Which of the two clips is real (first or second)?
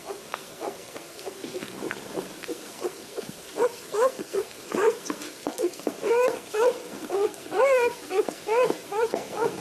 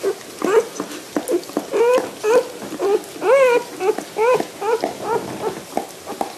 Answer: second